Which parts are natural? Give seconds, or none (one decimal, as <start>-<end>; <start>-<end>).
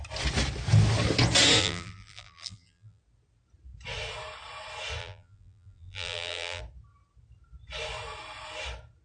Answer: 0.0-1.6; 3.0-5.0; 6.6-9.0